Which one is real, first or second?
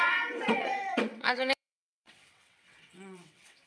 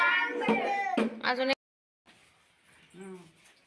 second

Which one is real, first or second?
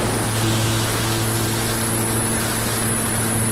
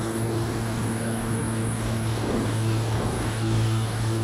first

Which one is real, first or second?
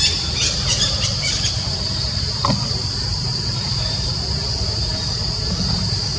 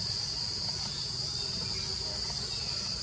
second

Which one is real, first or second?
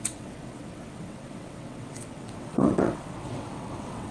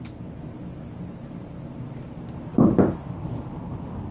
second